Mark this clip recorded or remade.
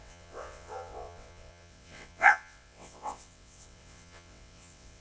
remade